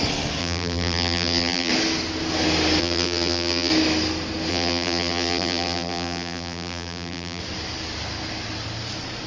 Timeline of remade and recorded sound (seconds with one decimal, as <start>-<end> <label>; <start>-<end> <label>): 0.0-0.4 recorded; 0.4-1.7 remade; 1.7-2.8 recorded; 2.8-3.7 remade; 3.7-4.5 recorded; 4.5-7.4 remade; 7.4-9.3 recorded